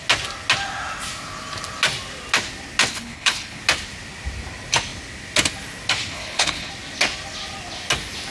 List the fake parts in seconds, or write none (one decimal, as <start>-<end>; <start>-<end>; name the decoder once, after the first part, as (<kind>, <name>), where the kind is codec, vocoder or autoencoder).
2.9-3.6 (codec, HILCodec); 6.1-6.7